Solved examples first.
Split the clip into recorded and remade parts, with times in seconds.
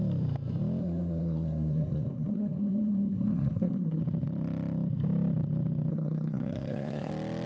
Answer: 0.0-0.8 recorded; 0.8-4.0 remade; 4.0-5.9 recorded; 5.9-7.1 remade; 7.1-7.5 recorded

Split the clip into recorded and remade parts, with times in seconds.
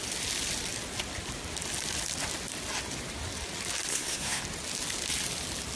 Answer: 0.0-3.9 recorded; 3.9-4.4 remade; 4.4-5.8 recorded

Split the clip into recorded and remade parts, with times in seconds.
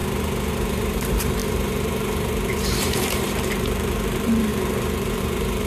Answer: 0.0-0.5 recorded; 0.5-5.7 remade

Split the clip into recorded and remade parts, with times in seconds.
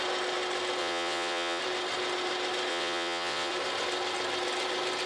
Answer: 0.0-0.8 recorded; 0.8-1.6 remade; 1.6-2.7 recorded; 2.7-3.5 remade; 3.5-5.1 recorded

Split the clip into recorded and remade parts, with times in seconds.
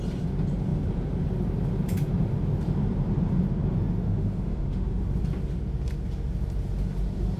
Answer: 0.0-4.0 recorded; 4.0-5.0 remade; 5.0-7.4 recorded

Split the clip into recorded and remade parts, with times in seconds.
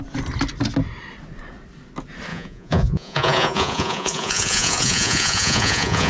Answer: 0.0-2.3 recorded; 2.3-6.1 remade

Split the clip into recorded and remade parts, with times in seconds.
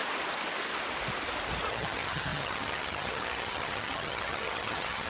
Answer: 0.0-1.7 recorded; 1.7-5.1 remade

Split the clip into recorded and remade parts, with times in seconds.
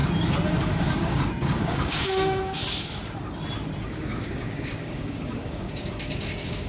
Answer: 0.0-0.6 recorded; 0.6-2.6 remade; 2.6-3.8 recorded; 3.8-6.7 remade